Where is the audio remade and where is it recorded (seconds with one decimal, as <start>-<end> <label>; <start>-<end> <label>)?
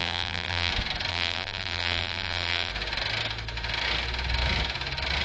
0.0-0.7 remade; 0.7-1.1 recorded; 1.1-2.7 remade; 2.7-5.2 recorded